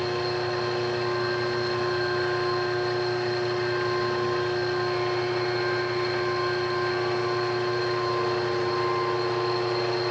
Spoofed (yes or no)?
no